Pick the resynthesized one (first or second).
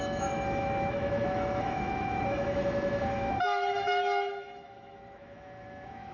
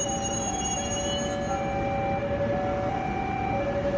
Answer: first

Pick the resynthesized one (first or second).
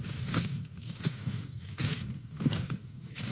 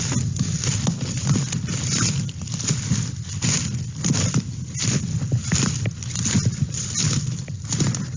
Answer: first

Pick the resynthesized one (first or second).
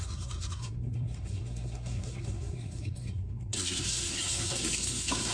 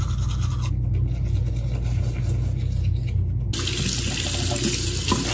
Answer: first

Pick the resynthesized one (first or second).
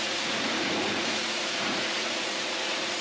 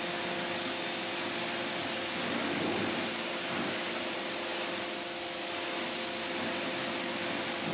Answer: first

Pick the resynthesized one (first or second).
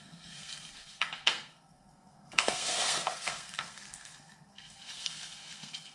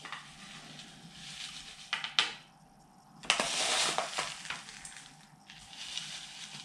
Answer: first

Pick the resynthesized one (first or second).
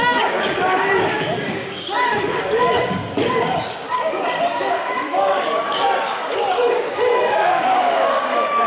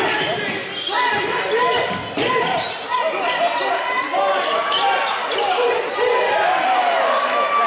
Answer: first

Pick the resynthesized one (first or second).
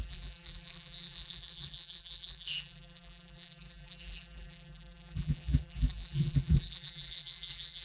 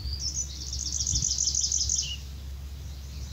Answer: first